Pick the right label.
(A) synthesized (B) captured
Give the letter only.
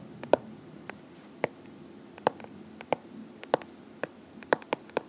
B